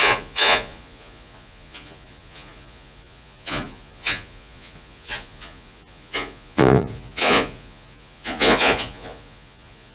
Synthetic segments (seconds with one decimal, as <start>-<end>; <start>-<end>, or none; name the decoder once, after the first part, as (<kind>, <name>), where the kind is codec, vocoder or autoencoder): 0.0-9.9 (vocoder, Vocos)